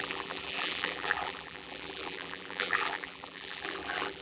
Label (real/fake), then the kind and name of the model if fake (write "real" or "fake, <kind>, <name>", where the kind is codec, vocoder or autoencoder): fake, vocoder, BigVGAN v2